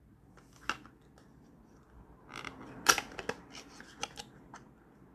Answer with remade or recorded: recorded